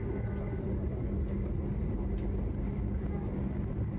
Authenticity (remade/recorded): recorded